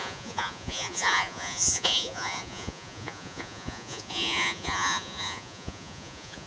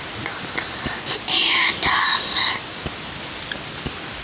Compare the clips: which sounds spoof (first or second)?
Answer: first